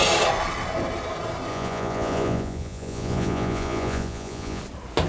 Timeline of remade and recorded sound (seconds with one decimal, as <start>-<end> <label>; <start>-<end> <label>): 0.0-1.5 recorded; 1.5-4.6 remade; 4.6-5.1 recorded

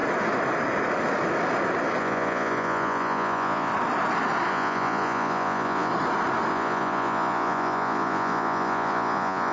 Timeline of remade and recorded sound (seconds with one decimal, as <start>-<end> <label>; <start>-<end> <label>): 0.0-2.0 recorded; 2.0-3.7 remade; 3.7-4.5 recorded; 4.5-5.9 remade; 5.9-6.5 recorded; 6.5-9.5 remade

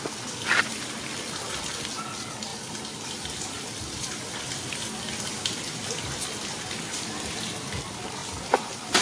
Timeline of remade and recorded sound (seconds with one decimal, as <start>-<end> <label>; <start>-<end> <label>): 0.0-9.0 recorded

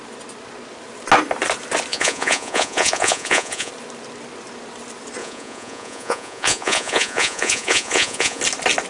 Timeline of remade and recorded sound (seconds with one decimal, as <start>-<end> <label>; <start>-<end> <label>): 0.0-1.9 recorded; 1.9-3.7 remade; 3.7-5.2 recorded; 5.2-8.4 remade; 8.4-8.9 recorded

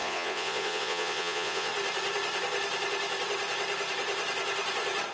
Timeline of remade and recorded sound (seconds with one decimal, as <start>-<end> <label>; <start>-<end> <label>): 0.0-1.7 remade; 1.7-5.1 recorded

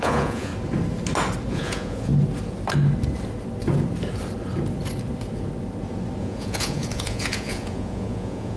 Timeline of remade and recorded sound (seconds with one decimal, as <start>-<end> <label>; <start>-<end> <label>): 0.0-0.5 remade; 0.5-1.5 recorded; 1.5-2.1 remade; 2.1-6.2 recorded; 6.2-8.6 remade

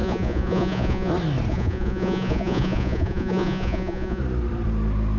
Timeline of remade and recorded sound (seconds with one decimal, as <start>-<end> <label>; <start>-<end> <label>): 0.0-1.1 remade; 1.1-1.5 recorded; 1.5-4.2 remade; 4.2-5.2 recorded